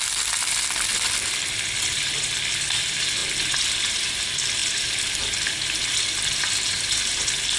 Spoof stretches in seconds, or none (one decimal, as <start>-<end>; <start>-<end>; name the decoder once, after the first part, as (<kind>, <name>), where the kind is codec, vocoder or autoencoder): none